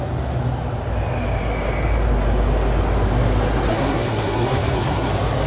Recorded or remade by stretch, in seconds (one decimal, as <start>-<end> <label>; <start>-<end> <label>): 0.0-3.7 recorded; 3.7-5.1 remade; 5.1-5.5 recorded